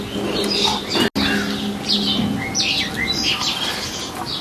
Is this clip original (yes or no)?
yes